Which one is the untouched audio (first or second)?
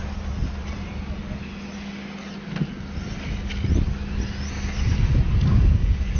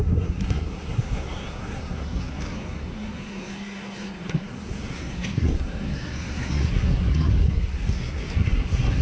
first